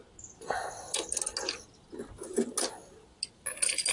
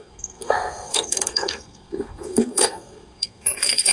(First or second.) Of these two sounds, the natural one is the first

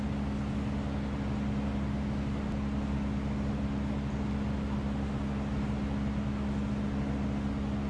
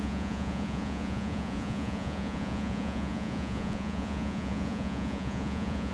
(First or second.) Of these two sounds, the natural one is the first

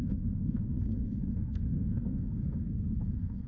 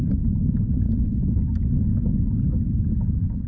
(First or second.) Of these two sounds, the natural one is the second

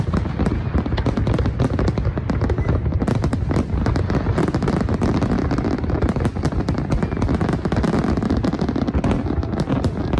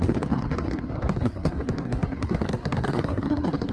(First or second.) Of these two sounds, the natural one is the first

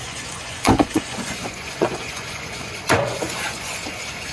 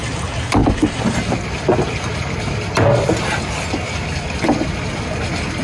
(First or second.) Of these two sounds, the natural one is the second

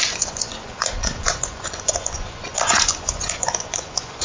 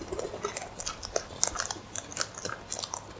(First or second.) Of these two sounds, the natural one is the second